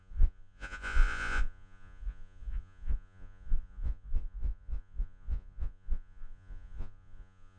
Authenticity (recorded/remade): remade